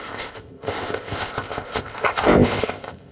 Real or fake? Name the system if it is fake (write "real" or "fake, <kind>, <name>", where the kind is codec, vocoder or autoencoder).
fake, codec, ZipCodec